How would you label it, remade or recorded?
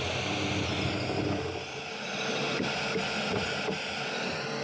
recorded